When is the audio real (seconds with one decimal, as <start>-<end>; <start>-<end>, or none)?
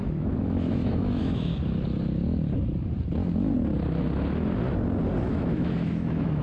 1.5-5.3